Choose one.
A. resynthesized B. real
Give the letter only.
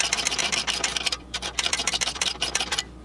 A